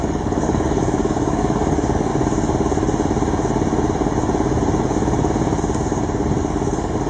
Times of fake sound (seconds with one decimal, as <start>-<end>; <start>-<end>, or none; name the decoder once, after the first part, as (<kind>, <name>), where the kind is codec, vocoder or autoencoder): 0.0-2.1 (codec, DAC); 6.4-7.1